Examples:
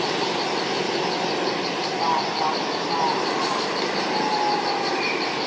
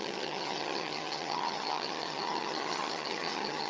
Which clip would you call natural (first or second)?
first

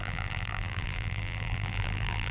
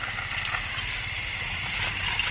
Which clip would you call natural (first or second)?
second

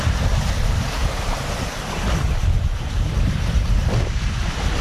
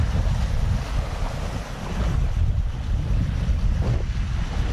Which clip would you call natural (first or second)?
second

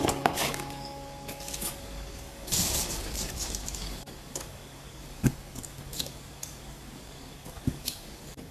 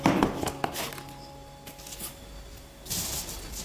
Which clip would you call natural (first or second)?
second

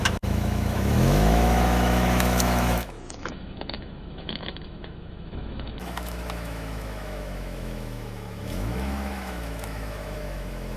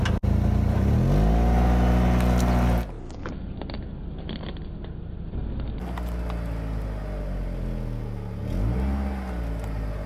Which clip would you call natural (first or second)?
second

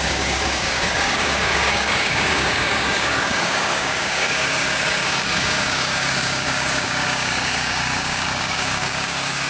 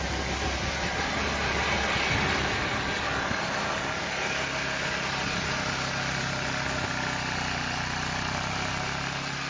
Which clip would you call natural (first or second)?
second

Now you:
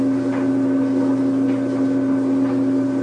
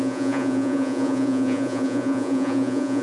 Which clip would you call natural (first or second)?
first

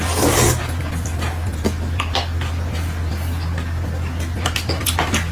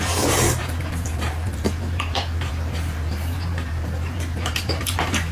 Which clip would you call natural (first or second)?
first